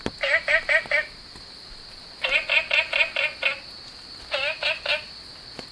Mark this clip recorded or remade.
recorded